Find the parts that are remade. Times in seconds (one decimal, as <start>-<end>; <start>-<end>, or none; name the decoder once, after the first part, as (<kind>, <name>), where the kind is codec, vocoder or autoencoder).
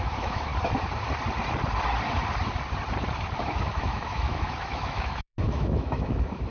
0.0-0.5 (autoencoder, DAC-VAE); 3.4-6.5